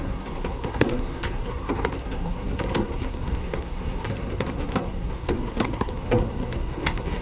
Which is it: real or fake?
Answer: fake